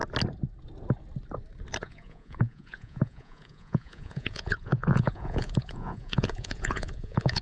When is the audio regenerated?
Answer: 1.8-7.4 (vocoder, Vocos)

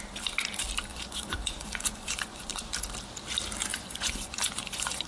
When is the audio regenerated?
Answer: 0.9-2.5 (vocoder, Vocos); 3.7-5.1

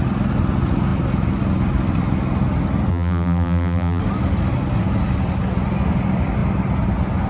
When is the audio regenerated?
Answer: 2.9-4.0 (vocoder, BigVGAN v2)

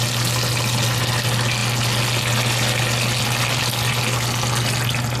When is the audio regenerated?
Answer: none

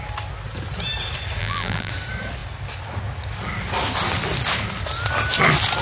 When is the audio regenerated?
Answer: 1.4-1.9 (vocoder, BigVGAN v2)

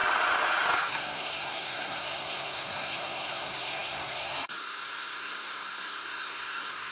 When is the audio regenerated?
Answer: 0.9-6.9 (codec, SNAC)